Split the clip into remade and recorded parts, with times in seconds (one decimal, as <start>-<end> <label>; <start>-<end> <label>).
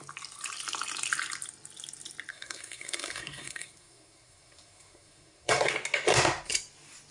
0.0-2.3 recorded; 2.3-5.7 remade; 5.7-7.1 recorded